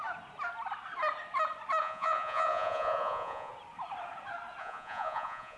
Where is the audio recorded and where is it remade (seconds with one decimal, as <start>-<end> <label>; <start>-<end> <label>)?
0.0-1.8 recorded; 1.8-3.5 remade; 3.5-4.6 recorded; 4.6-5.6 remade